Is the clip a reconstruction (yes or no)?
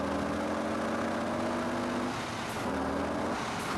no